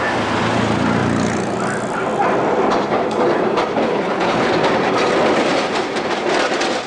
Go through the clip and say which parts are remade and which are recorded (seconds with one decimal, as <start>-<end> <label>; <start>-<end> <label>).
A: 0.0-3.8 recorded; 3.8-4.5 remade; 4.5-6.9 recorded